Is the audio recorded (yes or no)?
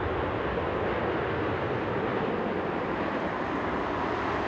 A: yes